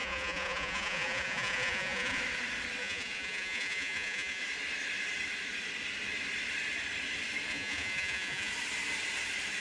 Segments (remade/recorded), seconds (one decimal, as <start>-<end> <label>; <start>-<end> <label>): 0.0-2.2 remade; 2.2-2.8 recorded; 2.8-4.4 remade; 4.4-7.5 recorded; 7.5-8.5 remade; 8.5-9.6 recorded